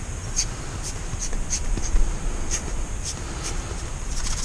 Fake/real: real